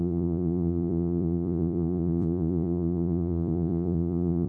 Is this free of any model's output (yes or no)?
no